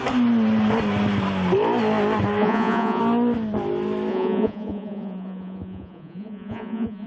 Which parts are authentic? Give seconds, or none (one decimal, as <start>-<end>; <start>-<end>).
0.0-2.4; 3.0-4.1